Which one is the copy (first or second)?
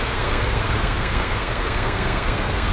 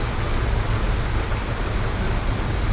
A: first